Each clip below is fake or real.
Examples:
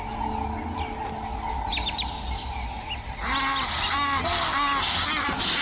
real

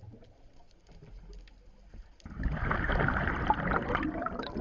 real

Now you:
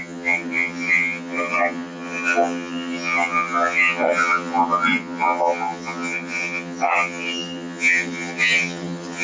fake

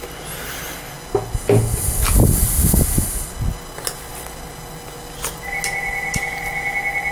real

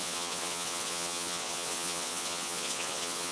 fake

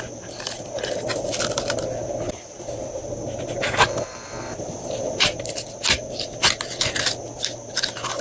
real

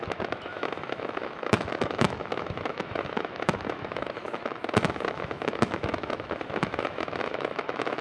fake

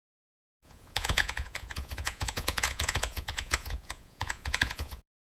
fake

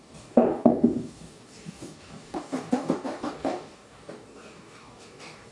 fake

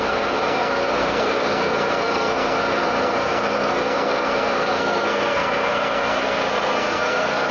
fake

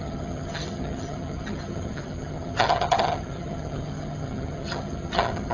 fake